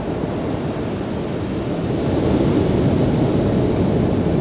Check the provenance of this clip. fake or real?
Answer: real